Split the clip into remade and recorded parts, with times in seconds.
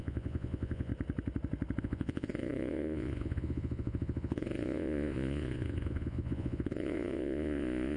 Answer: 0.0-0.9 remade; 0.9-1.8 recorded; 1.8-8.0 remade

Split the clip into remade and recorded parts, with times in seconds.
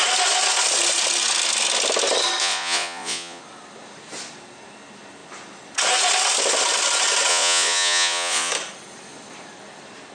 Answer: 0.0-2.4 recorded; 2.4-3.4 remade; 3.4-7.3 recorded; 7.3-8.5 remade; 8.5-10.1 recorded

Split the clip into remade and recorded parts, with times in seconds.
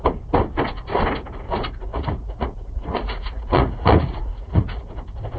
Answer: 0.0-1.8 recorded; 1.8-5.0 remade; 5.0-5.4 recorded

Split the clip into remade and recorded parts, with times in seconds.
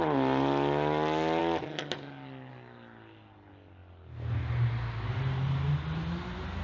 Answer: 0.0-6.6 recorded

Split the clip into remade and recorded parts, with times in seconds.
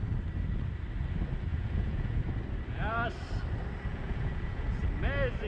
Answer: 0.0-1.5 recorded; 1.5-2.2 remade; 2.2-3.9 recorded; 3.9-4.8 remade; 4.8-5.5 recorded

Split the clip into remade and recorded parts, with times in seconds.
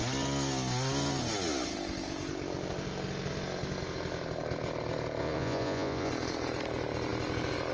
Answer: 0.0-5.2 recorded; 5.2-6.1 remade; 6.1-7.7 recorded